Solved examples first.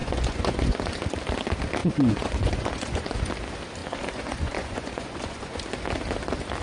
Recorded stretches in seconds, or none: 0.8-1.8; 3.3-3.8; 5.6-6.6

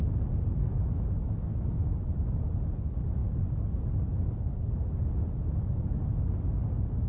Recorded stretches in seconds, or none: 0.0-0.7; 1.8-5.4; 6.0-7.1

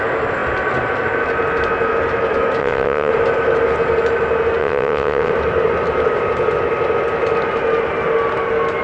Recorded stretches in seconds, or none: 0.0-2.6; 3.1-4.6; 5.3-8.8

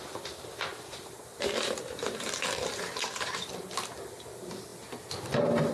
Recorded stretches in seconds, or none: 0.0-0.7; 3.5-5.7